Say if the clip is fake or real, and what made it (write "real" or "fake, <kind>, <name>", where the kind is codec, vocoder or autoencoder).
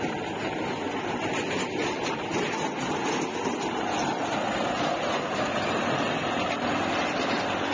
real